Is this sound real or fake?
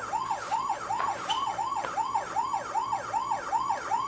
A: real